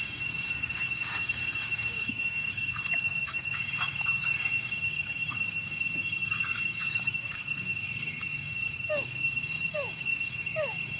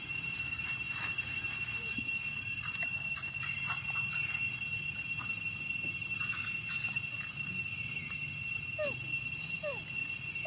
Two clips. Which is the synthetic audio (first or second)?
first